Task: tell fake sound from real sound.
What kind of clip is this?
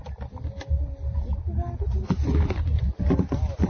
real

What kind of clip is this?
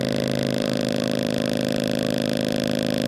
real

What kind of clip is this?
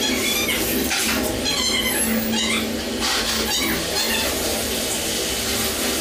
real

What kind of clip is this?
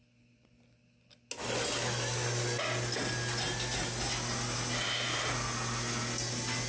real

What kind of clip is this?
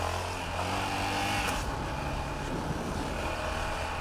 real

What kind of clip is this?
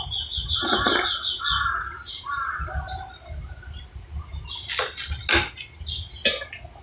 real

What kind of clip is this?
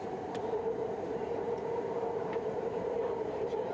fake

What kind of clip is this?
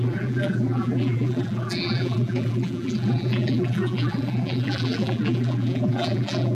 fake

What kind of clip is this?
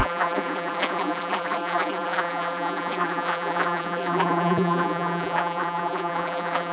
fake